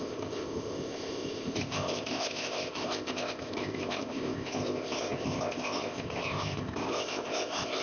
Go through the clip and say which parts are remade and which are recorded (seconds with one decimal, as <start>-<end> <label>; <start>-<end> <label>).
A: 0.0-7.8 remade